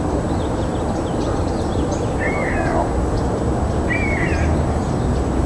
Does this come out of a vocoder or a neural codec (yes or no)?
no